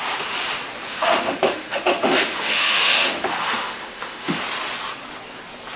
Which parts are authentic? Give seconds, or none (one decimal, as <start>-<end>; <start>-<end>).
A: 0.0-0.9; 4.4-5.8